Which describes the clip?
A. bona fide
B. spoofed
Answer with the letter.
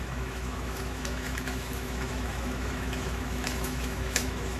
B